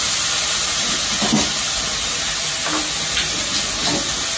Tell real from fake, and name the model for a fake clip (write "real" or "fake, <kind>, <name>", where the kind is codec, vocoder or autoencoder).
real